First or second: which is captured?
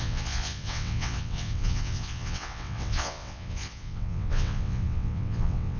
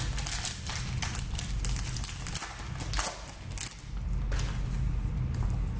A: second